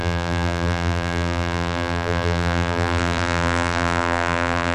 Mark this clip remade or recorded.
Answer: remade